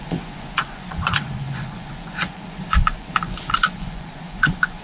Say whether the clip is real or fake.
fake